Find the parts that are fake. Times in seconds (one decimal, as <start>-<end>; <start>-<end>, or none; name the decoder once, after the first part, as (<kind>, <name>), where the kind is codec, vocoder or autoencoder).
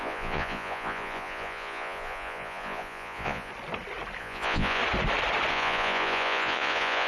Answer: 0.0-3.5 (vocoder, Vocos); 4.2-4.8; 5.5-7.1